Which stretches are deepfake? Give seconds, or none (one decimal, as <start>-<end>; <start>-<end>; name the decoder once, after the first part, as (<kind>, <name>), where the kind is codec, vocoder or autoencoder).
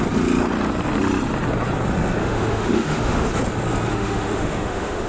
2.2-3.3 (autoencoder, DAC-VAE); 3.9-5.1